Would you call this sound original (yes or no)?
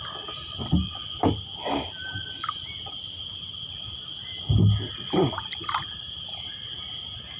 yes